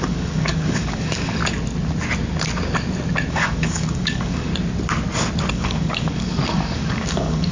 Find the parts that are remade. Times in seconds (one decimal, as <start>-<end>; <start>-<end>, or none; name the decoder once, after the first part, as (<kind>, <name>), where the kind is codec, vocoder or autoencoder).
0.0-1.4 (codec, DAC); 3.3-4.5; 5.5-7.5